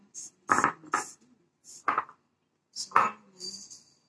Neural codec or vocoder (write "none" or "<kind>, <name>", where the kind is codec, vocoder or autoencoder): none